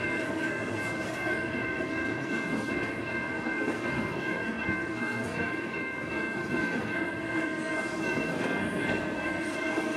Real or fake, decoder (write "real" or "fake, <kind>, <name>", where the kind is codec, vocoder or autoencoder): fake, codec, SNAC